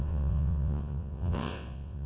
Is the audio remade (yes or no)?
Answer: yes